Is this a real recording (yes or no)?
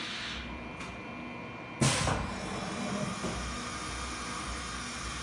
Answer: yes